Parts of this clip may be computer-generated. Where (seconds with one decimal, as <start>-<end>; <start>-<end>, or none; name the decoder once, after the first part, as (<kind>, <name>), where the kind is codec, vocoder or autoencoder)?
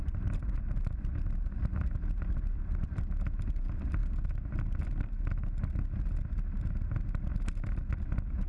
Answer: 0.4-3.0 (vocoder, BigVGAN v2)